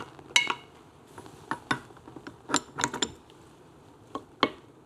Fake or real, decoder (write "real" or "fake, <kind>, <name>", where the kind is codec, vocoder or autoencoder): real